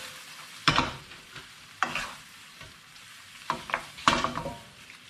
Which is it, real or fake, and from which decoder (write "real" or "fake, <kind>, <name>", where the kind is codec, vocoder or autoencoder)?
fake, vocoder, BigVGAN v2